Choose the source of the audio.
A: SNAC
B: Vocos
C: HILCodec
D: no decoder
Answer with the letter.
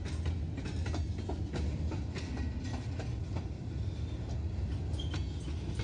D